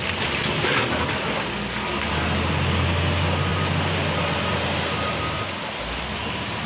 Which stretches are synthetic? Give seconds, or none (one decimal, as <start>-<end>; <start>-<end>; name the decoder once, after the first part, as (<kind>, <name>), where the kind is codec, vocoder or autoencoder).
none